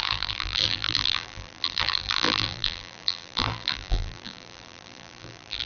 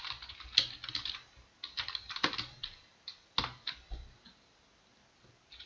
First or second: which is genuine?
second